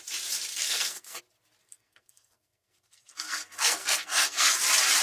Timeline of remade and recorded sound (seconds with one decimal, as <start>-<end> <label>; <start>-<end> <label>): 0.0-0.5 recorded; 0.5-1.2 remade; 1.2-1.6 recorded; 1.6-4.6 remade; 4.6-5.0 recorded